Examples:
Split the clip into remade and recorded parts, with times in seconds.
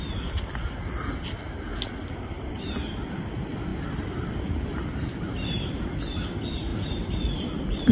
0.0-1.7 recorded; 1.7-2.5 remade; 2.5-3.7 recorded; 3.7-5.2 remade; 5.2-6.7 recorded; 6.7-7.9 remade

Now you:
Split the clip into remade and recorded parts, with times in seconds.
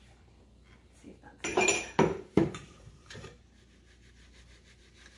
0.0-1.5 recorded; 1.5-3.4 remade; 3.4-5.2 recorded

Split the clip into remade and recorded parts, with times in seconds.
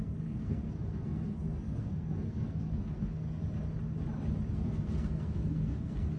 0.0-3.4 remade; 3.4-4.5 recorded; 4.5-6.2 remade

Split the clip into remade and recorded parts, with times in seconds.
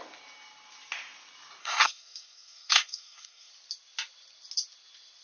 0.0-1.6 recorded; 1.6-3.5 remade; 3.5-5.2 recorded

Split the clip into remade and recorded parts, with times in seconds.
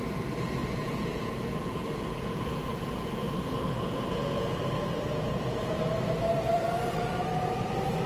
0.0-0.6 recorded; 0.6-4.5 remade; 4.5-5.1 recorded; 5.1-5.8 remade; 5.8-8.1 recorded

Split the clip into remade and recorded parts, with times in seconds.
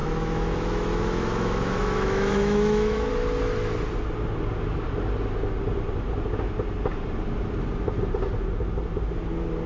0.0-3.1 remade; 3.1-9.7 recorded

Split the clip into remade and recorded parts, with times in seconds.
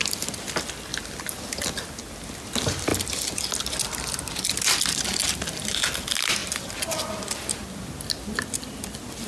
0.0-0.9 recorded; 0.9-2.0 remade; 2.0-6.4 recorded; 6.4-7.2 remade; 7.2-9.3 recorded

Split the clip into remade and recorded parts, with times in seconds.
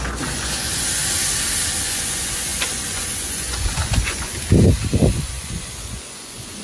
0.0-1.0 remade; 1.0-1.8 recorded; 1.8-4.3 remade; 4.3-4.9 recorded; 4.9-6.6 remade